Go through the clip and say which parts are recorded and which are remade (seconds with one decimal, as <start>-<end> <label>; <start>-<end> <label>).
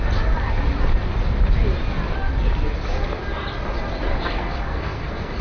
0.0-4.1 recorded; 4.1-5.4 remade